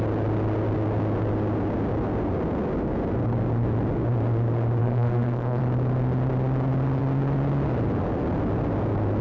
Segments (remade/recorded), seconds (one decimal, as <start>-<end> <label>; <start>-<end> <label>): 0.0-4.8 recorded; 4.8-5.6 remade; 5.6-9.2 recorded